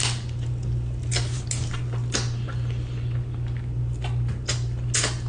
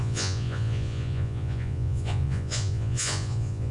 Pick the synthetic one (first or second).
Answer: second